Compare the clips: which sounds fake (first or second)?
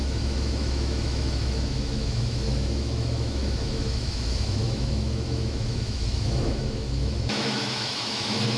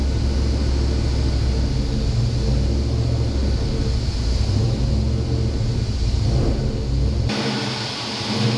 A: first